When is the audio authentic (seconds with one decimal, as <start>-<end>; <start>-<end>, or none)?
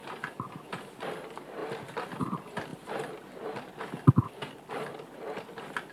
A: 0.0-5.9